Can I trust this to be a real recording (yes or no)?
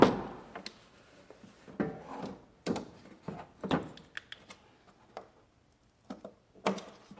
yes